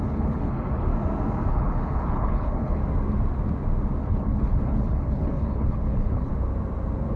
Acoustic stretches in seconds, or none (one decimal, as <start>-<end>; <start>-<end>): 0.9-1.5; 2.8-4.0; 6.3-7.2